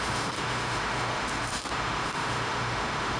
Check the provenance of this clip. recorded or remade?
remade